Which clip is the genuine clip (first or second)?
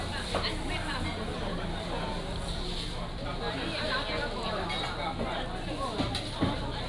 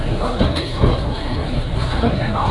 first